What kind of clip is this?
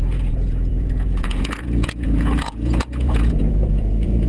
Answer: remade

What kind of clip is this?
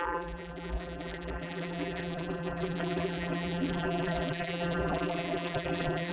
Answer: remade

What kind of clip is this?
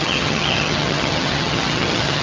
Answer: remade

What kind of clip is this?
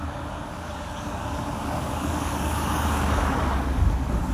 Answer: remade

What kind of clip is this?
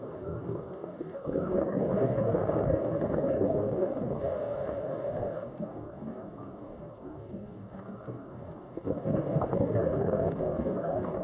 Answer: remade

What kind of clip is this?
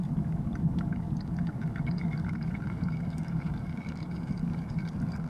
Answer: remade